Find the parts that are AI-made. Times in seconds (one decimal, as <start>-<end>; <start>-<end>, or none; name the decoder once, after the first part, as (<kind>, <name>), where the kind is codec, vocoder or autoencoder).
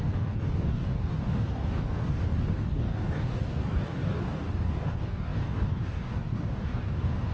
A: 0.0-7.3 (codec, DAC)